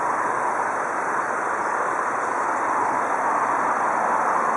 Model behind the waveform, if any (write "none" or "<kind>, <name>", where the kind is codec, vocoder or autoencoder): none